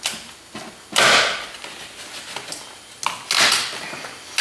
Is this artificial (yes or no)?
no